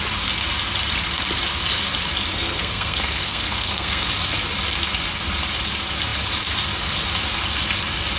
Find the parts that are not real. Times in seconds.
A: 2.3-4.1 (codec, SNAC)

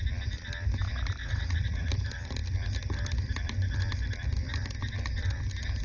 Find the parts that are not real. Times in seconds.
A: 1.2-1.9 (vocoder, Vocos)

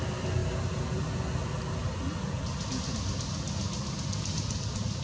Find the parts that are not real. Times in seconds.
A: none